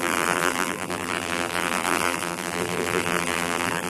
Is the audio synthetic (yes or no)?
yes